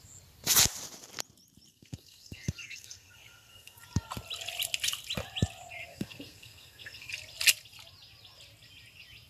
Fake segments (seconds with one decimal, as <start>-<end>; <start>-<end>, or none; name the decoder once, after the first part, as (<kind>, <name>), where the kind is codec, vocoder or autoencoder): 1.7-3.8 (codec, SNAC); 5.9-7.1